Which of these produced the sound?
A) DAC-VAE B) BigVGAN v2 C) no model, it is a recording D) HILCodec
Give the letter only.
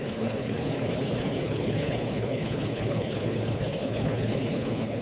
D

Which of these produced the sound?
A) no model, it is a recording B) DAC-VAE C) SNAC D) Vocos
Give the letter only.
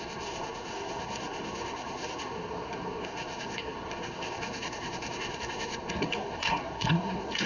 C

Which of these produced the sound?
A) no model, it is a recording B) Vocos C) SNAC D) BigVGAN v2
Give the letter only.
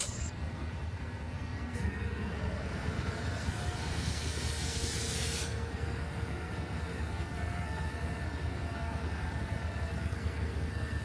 C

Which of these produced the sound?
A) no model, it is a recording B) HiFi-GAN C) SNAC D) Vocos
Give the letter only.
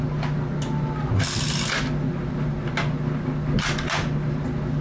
A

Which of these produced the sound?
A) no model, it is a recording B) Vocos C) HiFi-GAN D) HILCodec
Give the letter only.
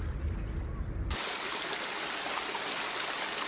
A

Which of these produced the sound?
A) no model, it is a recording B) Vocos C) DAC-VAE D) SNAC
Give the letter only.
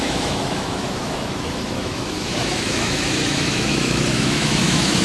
C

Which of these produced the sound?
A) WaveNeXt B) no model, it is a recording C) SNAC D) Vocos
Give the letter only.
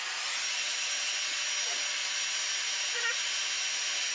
B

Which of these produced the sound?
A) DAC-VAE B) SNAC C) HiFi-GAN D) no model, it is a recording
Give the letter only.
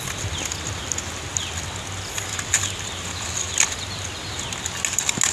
D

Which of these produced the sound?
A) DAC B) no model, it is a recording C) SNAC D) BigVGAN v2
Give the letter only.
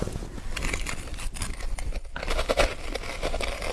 B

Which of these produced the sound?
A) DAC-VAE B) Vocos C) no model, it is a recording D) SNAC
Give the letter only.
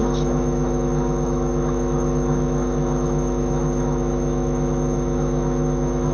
A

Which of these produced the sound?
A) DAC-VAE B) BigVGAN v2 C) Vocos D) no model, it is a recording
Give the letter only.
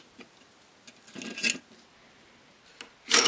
D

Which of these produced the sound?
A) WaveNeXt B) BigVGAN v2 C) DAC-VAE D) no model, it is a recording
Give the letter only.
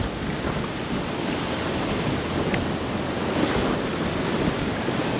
D